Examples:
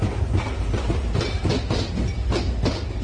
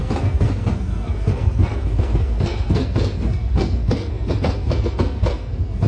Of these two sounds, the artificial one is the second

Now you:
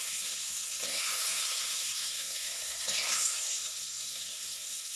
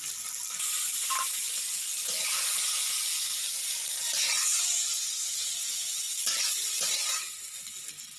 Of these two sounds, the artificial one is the first